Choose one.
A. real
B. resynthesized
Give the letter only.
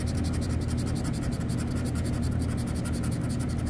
A